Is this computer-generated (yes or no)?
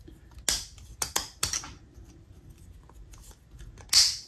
no